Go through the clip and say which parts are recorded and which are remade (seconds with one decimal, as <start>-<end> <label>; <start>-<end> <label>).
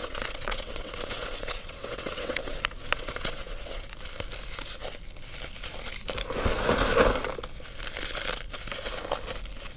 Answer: 0.0-3.9 remade; 3.9-9.8 recorded